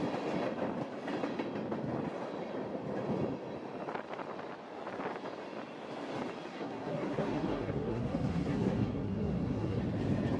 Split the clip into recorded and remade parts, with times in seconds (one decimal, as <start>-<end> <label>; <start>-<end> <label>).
0.0-6.5 recorded; 6.5-9.8 remade; 9.8-10.4 recorded